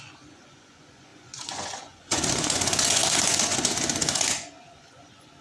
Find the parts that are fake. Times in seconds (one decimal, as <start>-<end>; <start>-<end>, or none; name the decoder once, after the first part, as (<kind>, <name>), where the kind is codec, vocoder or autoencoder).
0.0-5.4 (vocoder, Vocos)